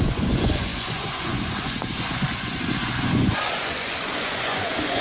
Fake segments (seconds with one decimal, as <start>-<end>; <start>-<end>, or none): 0.0-5.0